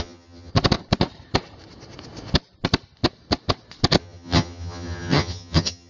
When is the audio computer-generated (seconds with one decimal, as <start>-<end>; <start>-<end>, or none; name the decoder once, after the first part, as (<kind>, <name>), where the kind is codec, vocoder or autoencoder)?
0.0-0.5 (vocoder, HiFi-GAN); 4.0-5.9